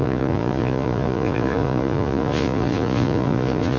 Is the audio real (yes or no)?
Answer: no